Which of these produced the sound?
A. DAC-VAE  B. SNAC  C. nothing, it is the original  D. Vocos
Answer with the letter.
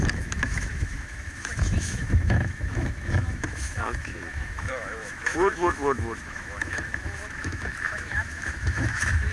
A